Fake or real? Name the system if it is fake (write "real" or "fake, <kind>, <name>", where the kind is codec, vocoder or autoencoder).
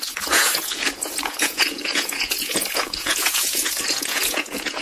fake, vocoder, Vocos